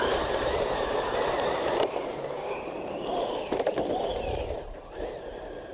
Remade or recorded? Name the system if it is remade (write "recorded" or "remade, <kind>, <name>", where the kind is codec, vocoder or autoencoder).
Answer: remade, vocoder, BigVGAN v2